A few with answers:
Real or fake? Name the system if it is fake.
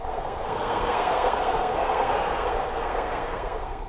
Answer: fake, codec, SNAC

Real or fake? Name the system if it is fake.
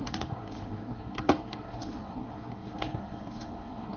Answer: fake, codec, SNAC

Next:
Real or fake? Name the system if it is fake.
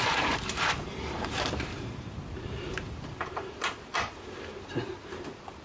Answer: fake, vocoder, BigVGAN v2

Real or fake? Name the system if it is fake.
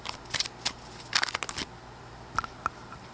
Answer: real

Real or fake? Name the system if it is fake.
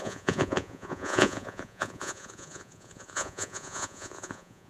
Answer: fake, vocoder, Vocos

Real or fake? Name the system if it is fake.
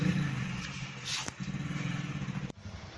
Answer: real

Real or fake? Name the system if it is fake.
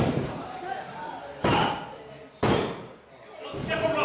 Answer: real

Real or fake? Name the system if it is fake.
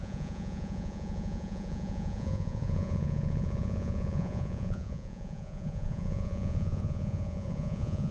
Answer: fake, vocoder, Vocos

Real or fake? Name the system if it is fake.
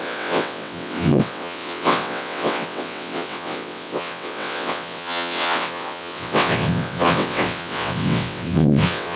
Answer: fake, vocoder, WaveNeXt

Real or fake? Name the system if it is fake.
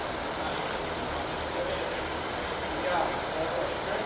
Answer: real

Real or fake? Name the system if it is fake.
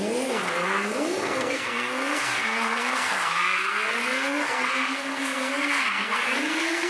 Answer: fake, codec, SNAC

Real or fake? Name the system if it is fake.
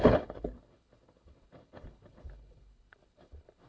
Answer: fake, codec, HILCodec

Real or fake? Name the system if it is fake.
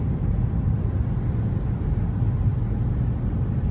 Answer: real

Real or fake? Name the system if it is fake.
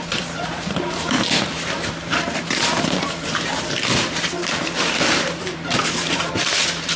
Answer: fake, vocoder, BigVGAN v2